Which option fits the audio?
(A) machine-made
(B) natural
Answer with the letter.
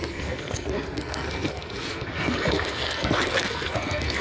A